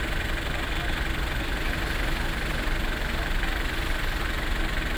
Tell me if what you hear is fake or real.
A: real